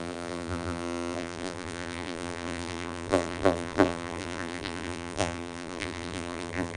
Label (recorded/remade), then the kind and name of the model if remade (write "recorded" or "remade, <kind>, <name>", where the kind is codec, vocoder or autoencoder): remade, vocoder, BigVGAN v2